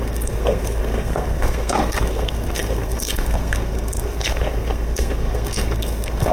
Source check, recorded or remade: remade